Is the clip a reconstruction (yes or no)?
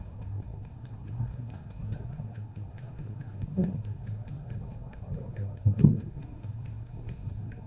yes